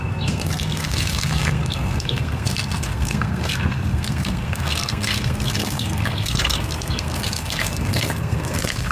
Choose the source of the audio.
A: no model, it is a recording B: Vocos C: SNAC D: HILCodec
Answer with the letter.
C